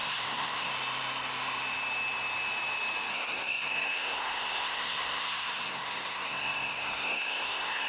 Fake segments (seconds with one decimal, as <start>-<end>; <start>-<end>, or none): 0.0-0.7; 3.1-7.9